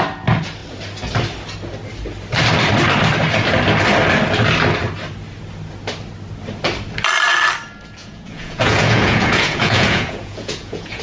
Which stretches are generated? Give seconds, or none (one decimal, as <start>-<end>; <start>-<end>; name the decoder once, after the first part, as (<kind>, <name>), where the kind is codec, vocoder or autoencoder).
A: 8.0-11.0 (vocoder, Vocos)